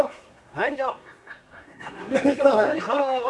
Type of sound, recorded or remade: remade